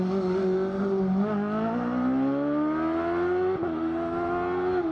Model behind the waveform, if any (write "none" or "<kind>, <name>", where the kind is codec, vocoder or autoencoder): none